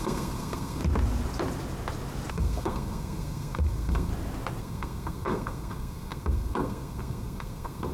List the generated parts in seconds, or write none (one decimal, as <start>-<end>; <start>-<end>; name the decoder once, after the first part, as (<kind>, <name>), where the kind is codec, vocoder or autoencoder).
0.0-0.8 (codec, SNAC); 2.3-4.1; 4.6-7.9